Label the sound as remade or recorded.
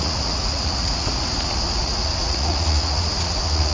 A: remade